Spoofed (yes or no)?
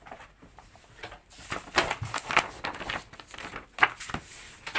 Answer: no